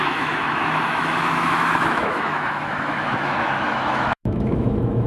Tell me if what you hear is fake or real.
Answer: fake